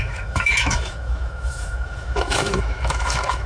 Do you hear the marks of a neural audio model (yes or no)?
yes